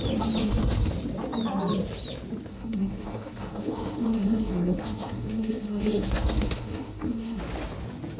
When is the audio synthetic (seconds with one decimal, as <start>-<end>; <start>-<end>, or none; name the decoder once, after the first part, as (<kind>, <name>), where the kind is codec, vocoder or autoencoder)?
0.4-0.9 (codec, SNAC); 2.5-7.4